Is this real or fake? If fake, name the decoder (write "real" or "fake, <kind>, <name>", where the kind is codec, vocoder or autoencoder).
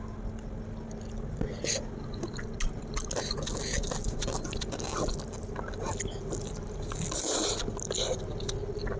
real